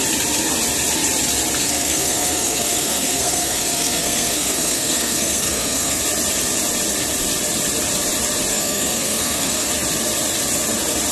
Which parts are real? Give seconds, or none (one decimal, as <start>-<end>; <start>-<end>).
0.0-1.6; 6.0-8.5; 9.7-11.1